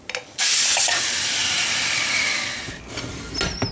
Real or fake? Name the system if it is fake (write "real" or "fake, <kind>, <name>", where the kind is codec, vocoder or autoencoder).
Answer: real